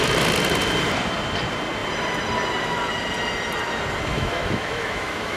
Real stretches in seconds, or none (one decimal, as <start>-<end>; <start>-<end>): 0.0-4.1